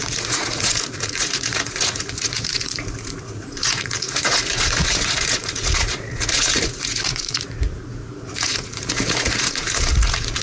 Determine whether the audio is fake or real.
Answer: fake